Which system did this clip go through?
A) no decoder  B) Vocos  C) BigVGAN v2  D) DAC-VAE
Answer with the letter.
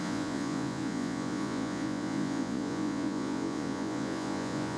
B